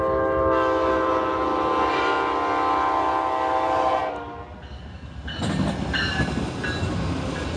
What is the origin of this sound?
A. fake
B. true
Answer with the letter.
B